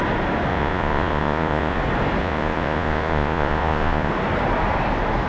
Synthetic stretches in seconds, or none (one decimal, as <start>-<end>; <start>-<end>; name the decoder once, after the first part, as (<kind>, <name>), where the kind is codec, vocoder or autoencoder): 0.5-1.8 (vocoder, Vocos); 2.2-4.1